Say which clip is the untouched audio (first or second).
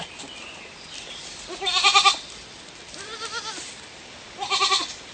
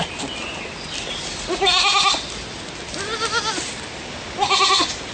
second